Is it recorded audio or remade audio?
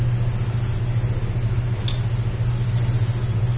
recorded